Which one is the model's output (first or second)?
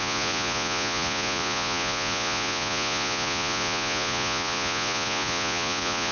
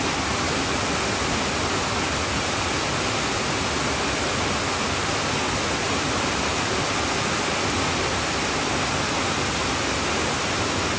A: first